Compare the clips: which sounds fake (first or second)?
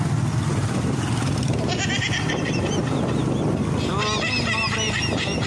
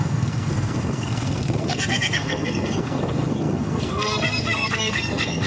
second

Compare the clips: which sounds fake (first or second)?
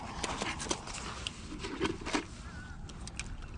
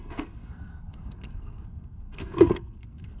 second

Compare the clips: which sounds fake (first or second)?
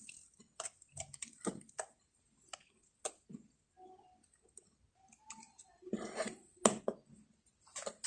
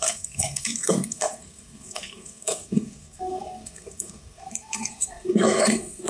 second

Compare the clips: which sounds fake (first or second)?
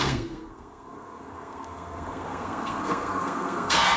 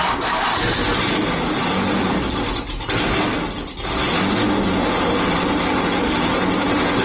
first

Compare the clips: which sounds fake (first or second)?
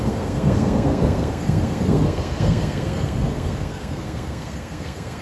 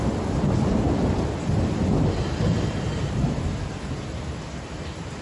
first